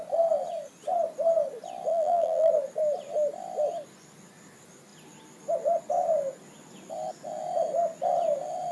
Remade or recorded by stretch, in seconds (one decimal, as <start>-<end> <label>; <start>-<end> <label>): 0.0-1.9 recorded; 1.9-2.5 remade; 2.5-8.7 recorded